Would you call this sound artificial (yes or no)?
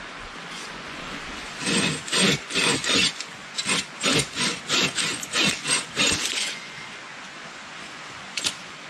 yes